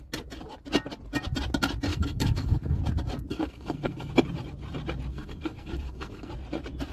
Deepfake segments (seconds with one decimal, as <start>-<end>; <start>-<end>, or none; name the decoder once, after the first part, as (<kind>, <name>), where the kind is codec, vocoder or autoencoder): 1.9-2.8 (codec, SNAC); 3.3-4.1; 5.1-6.3